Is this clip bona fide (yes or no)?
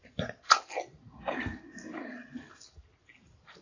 yes